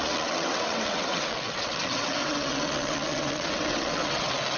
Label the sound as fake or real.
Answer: fake